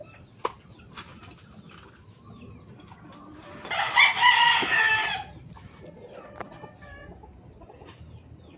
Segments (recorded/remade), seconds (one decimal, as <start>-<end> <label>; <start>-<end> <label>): 0.0-8.6 recorded